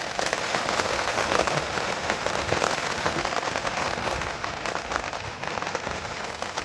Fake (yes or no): yes